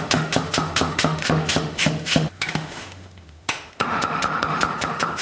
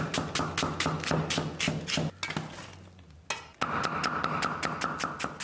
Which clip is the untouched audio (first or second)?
second